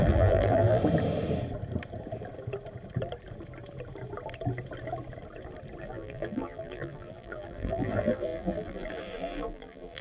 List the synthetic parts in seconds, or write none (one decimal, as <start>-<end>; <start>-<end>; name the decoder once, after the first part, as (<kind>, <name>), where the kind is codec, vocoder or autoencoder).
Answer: 0.0-0.8 (vocoder, BigVGAN v2); 5.8-10.0